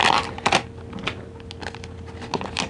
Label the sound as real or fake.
real